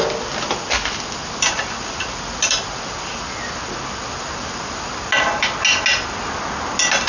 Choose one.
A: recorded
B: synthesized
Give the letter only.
A